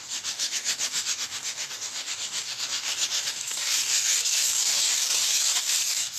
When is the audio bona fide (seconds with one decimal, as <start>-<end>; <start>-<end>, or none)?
none